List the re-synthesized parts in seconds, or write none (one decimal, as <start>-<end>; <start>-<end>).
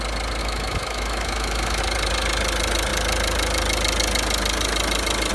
0.4-1.8